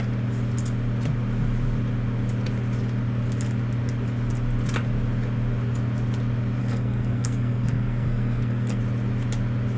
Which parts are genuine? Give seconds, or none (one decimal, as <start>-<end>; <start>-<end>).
0.0-6.6; 8.8-9.8